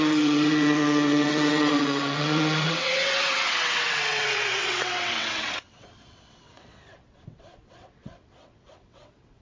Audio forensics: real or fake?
fake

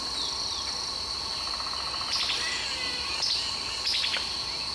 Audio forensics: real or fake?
real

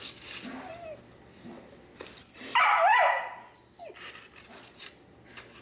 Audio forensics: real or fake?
real